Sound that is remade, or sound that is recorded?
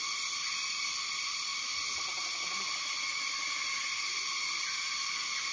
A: recorded